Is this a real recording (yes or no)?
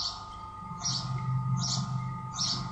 yes